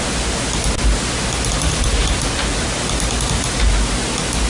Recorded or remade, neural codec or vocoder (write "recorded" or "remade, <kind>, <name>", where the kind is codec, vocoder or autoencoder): recorded